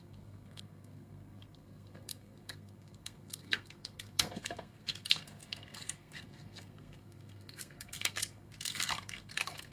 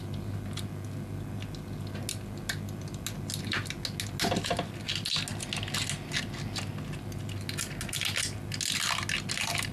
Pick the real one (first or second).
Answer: second